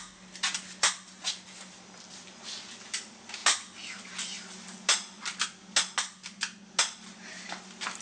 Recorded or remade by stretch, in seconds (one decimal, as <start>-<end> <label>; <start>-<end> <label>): 0.0-8.0 recorded